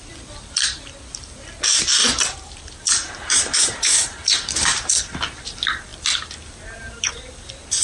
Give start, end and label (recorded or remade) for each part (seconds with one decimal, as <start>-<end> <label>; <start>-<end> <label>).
0.0-2.0 recorded; 2.0-5.0 remade; 5.0-7.8 recorded